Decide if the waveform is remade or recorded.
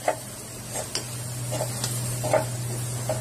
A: remade